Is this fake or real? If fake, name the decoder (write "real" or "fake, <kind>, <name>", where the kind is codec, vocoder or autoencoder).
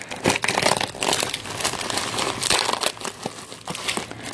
real